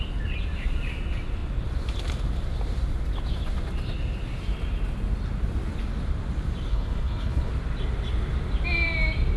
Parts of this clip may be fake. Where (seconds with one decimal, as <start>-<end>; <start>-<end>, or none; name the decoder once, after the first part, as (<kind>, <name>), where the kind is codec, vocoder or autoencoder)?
6.7-7.5 (codec, HILCodec)